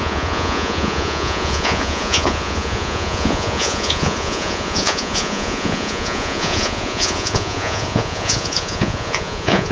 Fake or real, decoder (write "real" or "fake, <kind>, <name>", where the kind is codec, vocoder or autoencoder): fake, vocoder, Vocos